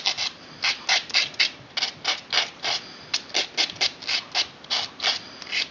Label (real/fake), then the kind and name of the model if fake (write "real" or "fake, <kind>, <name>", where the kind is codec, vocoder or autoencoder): real